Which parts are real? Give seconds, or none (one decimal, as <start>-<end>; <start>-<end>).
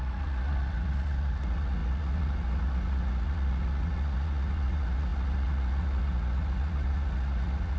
none